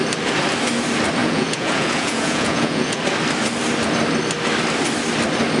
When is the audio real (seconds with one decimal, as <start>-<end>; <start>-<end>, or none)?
0.0-1.2; 3.0-5.6